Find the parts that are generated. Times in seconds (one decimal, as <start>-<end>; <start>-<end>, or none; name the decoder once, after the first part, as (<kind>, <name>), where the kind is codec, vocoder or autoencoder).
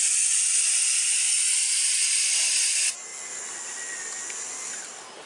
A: 0.0-0.8 (vocoder, BigVGAN v2); 1.4-5.3